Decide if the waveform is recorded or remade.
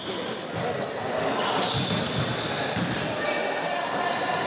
recorded